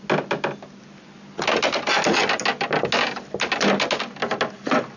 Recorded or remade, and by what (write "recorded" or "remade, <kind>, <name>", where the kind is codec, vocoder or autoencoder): recorded